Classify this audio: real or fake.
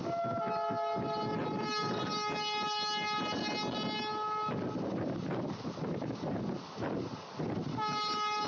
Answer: real